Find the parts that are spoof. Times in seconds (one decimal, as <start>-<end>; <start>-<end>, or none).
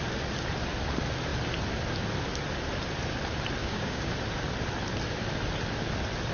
3.6-4.1